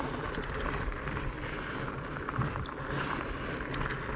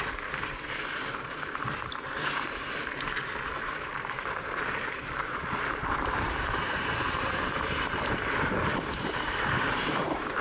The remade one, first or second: second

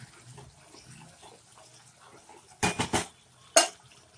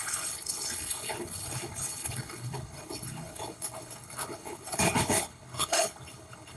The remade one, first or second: second